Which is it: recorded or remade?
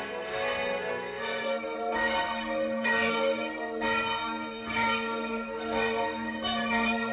remade